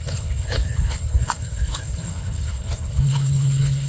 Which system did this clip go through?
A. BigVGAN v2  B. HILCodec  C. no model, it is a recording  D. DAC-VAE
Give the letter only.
B